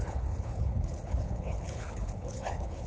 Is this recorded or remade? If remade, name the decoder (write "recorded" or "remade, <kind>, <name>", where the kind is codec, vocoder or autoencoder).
remade, codec, HILCodec